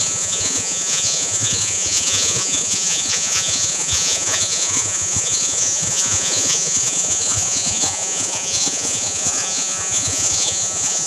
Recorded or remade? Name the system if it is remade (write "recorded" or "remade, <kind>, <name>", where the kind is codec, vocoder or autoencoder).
remade, vocoder, Vocos